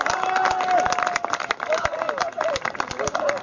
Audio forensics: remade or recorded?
recorded